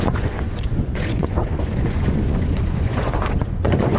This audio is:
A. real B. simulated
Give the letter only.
B